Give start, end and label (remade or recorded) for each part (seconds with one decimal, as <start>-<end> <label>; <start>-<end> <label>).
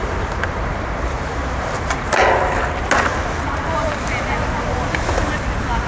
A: 0.0-2.2 remade; 2.2-5.9 recorded